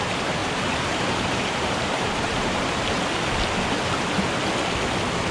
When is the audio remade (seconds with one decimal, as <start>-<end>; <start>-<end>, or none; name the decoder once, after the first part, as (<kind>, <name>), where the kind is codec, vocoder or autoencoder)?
0.4-3.0 (vocoder, BigVGAN v2)